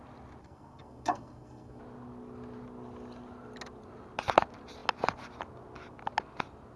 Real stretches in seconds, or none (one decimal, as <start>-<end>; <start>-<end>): 0.0-0.4; 1.8-6.8

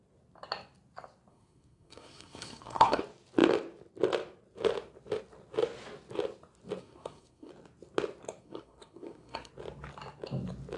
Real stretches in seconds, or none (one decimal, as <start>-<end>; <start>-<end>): 0.0-1.3; 3.0-6.8; 7.5-8.4; 9.5-10.8

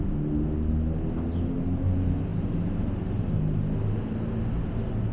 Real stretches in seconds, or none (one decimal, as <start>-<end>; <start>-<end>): 0.0-5.1

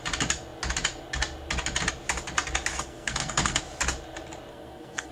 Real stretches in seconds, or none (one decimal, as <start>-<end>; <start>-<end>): 0.0-2.7; 3.6-4.5